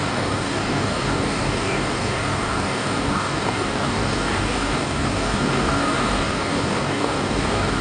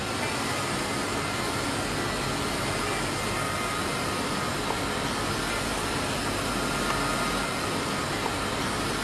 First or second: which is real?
second